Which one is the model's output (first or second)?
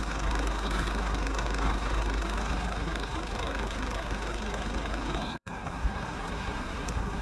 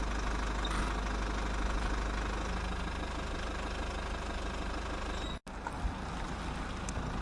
first